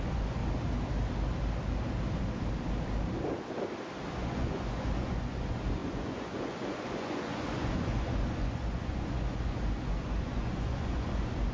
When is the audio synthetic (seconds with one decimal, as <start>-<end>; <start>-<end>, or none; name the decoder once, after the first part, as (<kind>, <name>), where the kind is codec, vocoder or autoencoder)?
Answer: 0.0-0.4 (vocoder, Vocos); 4.1-11.5

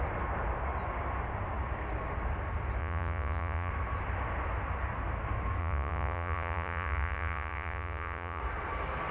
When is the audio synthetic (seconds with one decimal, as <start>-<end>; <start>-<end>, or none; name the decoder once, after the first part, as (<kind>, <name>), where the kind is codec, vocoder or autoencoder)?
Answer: 2.8-3.7 (vocoder, Vocos); 5.6-8.4

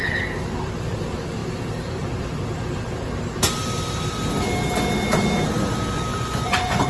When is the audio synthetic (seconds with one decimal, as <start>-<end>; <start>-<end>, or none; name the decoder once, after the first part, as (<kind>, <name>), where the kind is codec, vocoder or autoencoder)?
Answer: 6.1-6.9 (vocoder, Vocos)

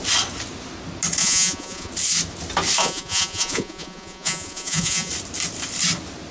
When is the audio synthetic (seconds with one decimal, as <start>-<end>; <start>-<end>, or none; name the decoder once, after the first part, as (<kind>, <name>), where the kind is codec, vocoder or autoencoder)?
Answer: 1.2-1.9 (vocoder, Vocos); 2.8-5.1